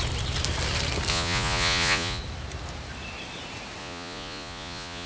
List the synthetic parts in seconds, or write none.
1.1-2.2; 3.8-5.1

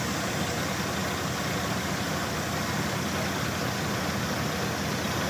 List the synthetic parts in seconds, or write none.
none

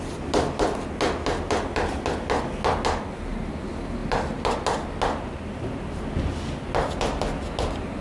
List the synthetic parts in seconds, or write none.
none

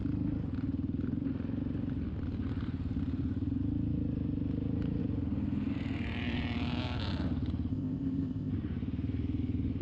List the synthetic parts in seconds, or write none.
7.7-8.5

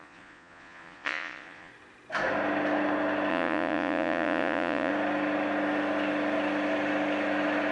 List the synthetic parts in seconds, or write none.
0.0-1.7; 3.3-4.9

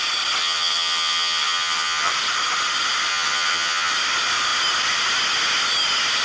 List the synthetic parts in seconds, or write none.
0.4-2.1; 3.1-3.9